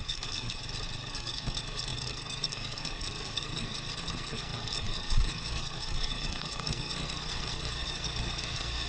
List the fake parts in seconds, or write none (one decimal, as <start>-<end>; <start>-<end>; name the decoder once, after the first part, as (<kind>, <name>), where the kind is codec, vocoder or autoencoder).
0.0-0.6 (codec, SNAC); 1.1-8.9